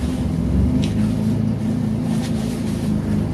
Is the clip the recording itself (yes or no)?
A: yes